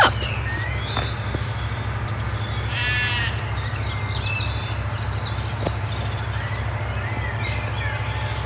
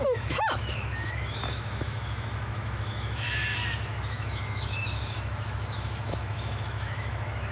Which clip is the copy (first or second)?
second